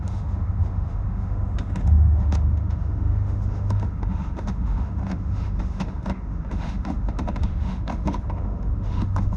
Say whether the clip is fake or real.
fake